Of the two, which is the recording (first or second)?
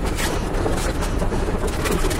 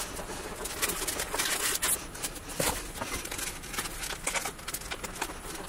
second